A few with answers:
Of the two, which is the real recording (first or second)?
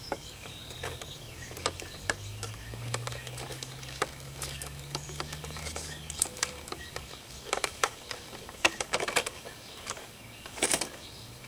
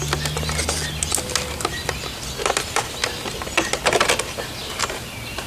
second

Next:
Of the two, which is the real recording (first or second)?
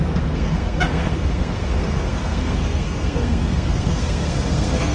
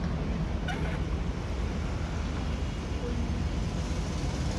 second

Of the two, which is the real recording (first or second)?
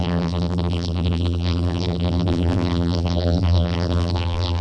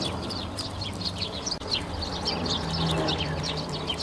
second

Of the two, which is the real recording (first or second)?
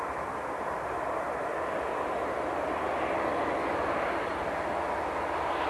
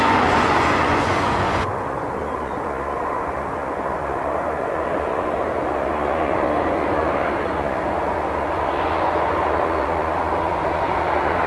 first